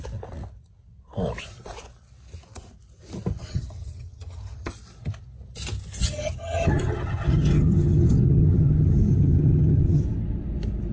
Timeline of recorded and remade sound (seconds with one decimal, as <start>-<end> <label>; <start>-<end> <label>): 0.0-3.3 recorded; 3.3-4.7 remade; 4.7-6.0 recorded; 6.0-10.0 remade; 10.0-10.9 recorded